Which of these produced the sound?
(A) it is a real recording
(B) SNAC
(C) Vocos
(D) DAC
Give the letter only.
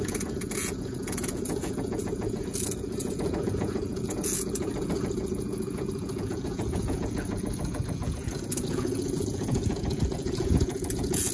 C